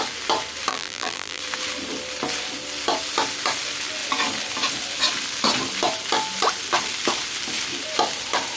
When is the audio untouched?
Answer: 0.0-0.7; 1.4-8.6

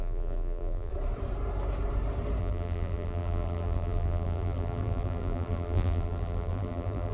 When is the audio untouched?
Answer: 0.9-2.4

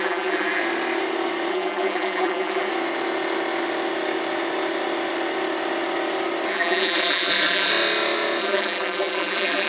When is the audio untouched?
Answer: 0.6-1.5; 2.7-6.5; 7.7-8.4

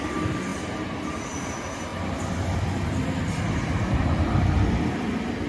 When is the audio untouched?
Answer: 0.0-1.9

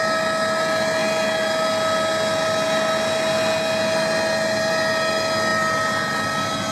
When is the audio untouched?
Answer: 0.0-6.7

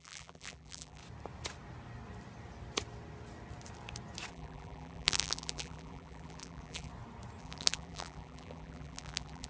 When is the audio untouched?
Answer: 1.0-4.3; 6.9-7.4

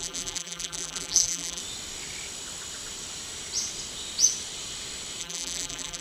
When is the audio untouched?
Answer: 1.6-5.2

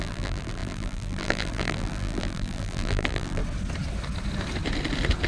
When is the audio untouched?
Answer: 3.4-5.3